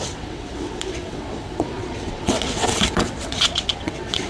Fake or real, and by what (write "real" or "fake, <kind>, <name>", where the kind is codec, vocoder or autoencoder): fake, vocoder, WaveNeXt